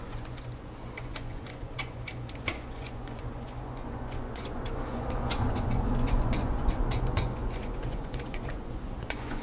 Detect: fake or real fake